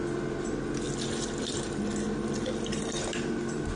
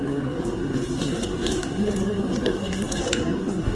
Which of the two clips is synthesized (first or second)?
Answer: second